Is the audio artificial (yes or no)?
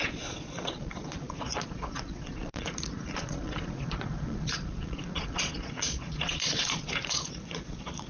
yes